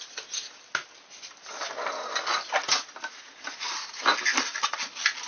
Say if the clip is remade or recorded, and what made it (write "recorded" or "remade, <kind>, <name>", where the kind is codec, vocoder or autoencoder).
recorded